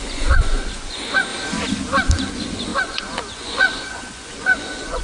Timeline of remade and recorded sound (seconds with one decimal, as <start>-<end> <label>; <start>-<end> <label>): 0.0-1.3 remade; 1.3-2.3 recorded; 2.3-5.0 remade